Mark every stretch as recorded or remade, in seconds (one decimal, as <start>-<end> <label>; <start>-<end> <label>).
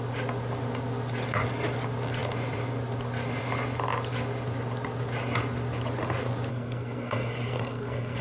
0.0-6.5 recorded; 6.5-8.2 remade